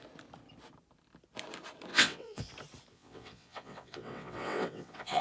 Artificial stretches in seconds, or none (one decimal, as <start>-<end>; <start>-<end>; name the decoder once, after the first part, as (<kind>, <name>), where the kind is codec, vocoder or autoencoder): 1.9-2.5 (vocoder, WaveNeXt); 2.9-5.2